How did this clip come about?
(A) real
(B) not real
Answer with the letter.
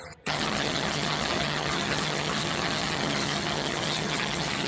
B